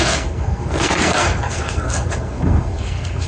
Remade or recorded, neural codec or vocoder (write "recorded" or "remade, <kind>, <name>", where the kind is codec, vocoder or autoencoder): remade, codec, SNAC